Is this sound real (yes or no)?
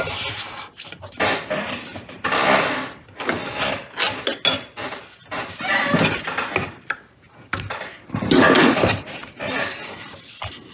yes